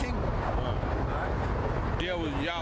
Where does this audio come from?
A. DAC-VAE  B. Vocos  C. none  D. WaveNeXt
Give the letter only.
C